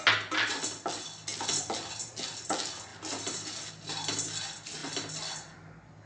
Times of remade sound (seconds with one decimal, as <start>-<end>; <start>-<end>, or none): none